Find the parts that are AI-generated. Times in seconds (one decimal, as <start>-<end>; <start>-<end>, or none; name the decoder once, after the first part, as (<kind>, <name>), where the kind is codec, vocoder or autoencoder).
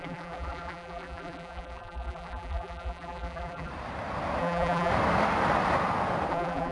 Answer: 0.0-3.7 (vocoder, BigVGAN v2); 4.4-4.9; 6.3-6.7